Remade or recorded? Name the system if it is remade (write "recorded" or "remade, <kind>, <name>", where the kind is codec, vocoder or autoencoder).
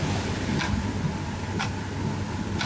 recorded